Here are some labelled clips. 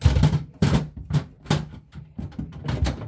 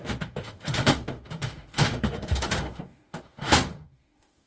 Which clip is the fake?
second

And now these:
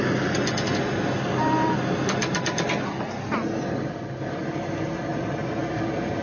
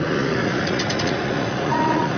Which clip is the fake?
second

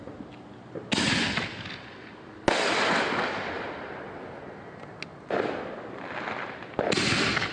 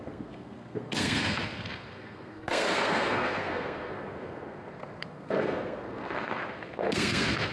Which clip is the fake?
second